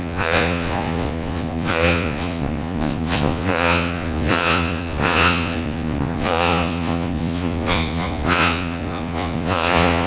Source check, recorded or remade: remade